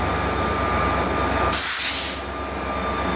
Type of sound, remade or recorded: recorded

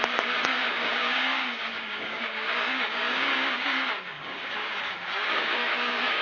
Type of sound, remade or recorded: remade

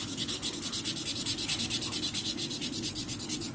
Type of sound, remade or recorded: recorded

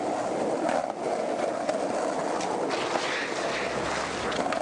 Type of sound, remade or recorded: recorded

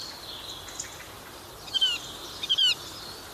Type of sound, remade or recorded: recorded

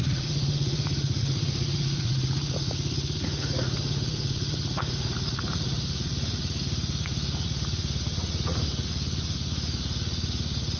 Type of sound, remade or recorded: remade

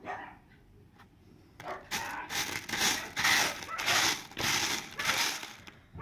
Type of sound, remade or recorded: recorded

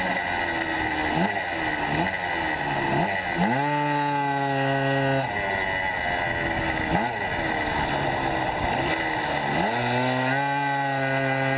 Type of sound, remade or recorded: recorded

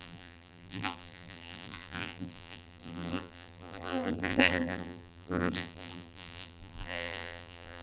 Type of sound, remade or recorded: remade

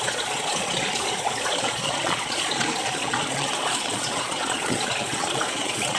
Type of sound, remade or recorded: remade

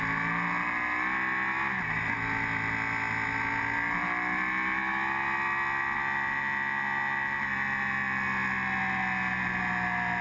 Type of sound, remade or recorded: recorded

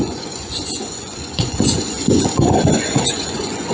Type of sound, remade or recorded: remade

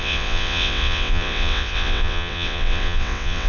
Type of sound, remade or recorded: remade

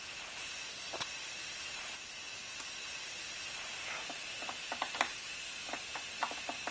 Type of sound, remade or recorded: recorded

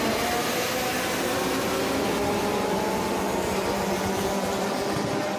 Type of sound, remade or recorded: recorded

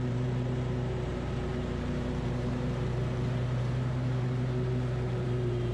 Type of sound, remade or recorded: remade